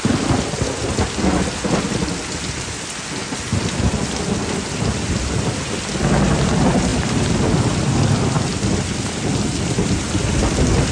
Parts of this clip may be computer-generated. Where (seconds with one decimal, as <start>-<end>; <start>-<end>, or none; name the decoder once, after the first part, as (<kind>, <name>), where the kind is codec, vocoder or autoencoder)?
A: none